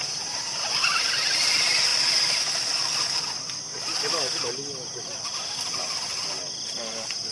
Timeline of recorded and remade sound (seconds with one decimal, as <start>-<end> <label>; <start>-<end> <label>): 0.0-7.3 recorded